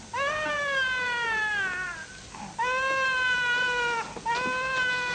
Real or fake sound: real